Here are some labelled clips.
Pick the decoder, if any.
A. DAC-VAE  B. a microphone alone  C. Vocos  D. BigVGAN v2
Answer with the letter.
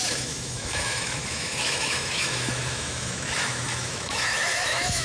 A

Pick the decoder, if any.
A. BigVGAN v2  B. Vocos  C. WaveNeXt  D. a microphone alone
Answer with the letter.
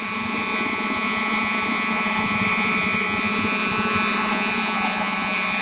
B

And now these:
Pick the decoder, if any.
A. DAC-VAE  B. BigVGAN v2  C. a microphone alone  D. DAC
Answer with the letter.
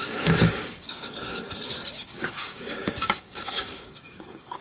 D